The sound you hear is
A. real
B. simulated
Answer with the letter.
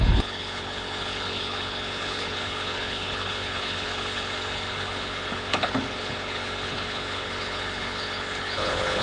B